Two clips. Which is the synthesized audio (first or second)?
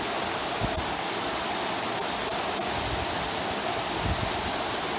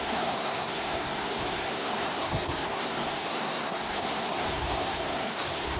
second